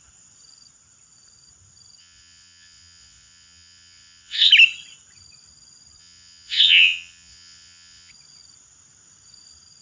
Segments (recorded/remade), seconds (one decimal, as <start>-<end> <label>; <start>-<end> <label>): 0.0-2.0 recorded; 2.0-4.5 remade; 4.5-6.0 recorded; 6.0-8.1 remade; 8.1-9.8 recorded